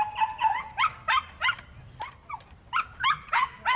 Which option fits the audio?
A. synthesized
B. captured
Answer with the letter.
B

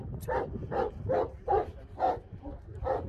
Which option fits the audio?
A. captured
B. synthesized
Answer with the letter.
A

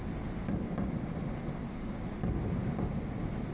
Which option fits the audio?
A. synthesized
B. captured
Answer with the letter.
B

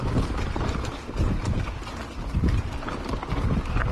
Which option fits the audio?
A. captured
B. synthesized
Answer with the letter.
A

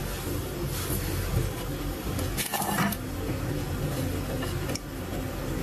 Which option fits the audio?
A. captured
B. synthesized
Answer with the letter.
A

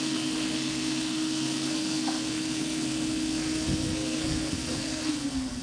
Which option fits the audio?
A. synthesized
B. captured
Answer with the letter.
A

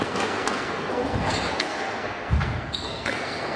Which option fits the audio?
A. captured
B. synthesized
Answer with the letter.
B